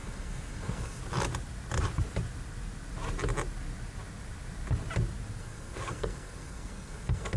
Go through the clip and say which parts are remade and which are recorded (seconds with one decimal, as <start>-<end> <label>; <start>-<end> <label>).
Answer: 0.0-1.0 remade; 1.0-5.4 recorded; 5.4-7.4 remade